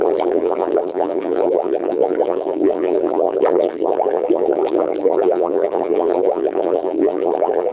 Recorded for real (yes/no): no